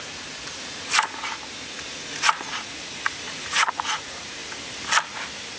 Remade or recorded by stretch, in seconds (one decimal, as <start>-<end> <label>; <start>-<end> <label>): 0.0-1.3 remade; 1.3-1.9 recorded; 1.9-4.4 remade; 4.4-5.6 recorded